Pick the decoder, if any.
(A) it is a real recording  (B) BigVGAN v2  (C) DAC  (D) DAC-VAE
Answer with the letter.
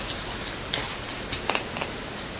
B